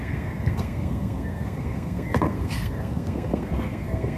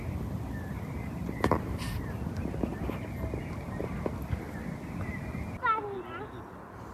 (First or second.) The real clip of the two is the second